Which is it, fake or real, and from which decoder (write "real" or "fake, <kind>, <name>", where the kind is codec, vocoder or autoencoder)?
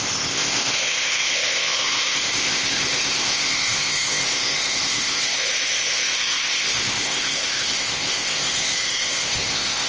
fake, codec, ZipCodec